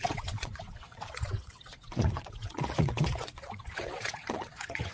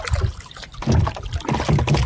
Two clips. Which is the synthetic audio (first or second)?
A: first